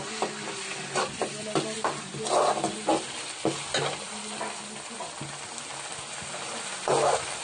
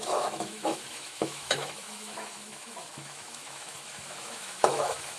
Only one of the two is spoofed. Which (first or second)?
second